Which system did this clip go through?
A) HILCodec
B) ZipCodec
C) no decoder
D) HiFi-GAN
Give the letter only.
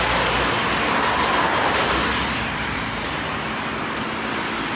C